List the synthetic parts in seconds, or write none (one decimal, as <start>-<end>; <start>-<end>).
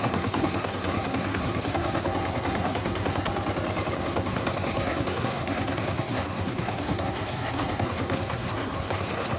0.0-3.3; 4.0-9.4